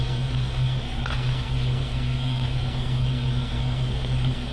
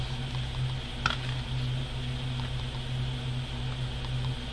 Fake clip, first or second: first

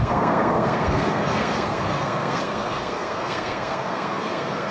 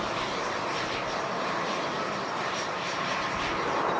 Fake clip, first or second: first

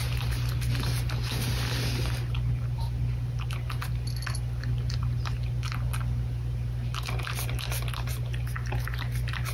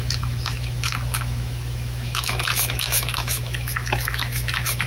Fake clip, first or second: second